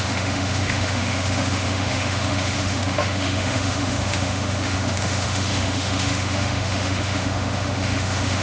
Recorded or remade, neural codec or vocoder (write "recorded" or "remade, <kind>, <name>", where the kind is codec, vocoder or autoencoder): remade, autoencoder, DAC-VAE